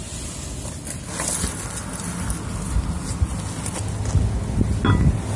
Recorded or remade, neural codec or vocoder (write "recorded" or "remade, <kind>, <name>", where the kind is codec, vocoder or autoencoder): recorded